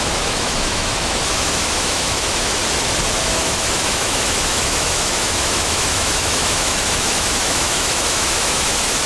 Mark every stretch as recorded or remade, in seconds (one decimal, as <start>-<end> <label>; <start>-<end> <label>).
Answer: 0.0-2.6 remade; 2.6-3.2 recorded; 3.2-9.1 remade